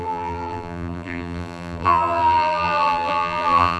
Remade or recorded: remade